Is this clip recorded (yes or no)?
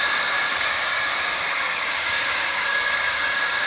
no